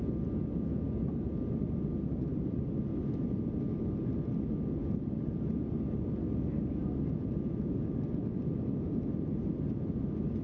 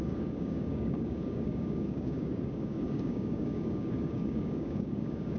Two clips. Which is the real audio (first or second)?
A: first